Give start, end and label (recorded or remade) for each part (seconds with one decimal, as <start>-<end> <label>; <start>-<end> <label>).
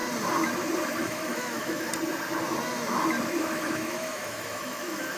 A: 0.0-1.0 recorded; 1.0-1.9 remade; 1.9-3.4 recorded; 3.4-5.2 remade